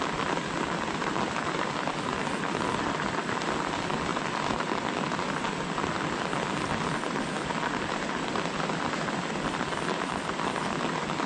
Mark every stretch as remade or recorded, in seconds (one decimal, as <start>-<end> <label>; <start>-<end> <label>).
0.0-11.3 recorded